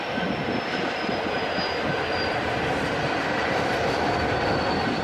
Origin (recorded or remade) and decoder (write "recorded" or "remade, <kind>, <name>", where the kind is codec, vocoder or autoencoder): recorded